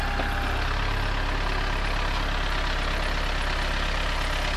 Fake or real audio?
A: real